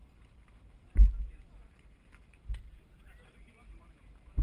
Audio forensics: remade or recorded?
remade